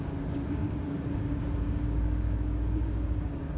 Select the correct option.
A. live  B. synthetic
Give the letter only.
B